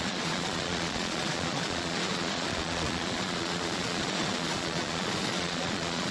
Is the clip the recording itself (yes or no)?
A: no